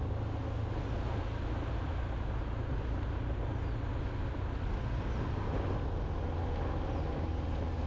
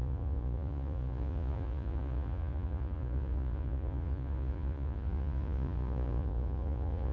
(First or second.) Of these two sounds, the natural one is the first